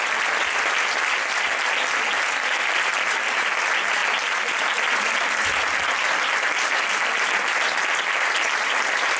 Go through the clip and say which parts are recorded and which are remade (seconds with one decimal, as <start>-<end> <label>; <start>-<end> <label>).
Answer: 0.0-9.2 recorded